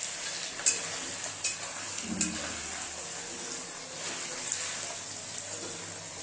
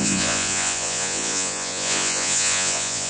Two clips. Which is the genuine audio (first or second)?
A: first